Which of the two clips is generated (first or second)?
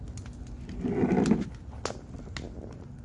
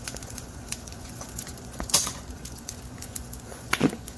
second